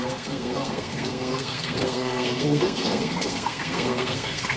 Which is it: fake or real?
fake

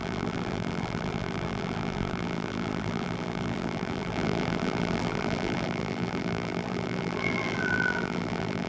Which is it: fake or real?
fake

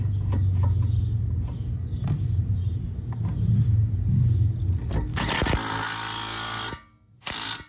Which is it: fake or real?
real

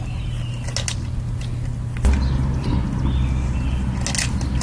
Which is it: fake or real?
real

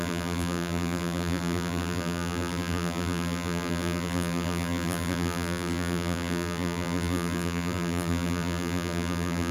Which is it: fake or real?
fake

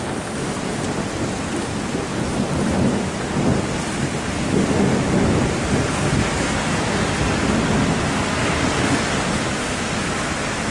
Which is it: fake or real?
real